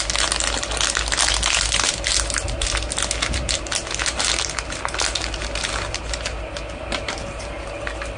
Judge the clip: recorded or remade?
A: recorded